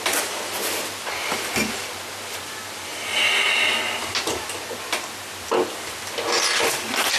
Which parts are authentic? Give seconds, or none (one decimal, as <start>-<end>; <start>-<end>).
0.0-7.2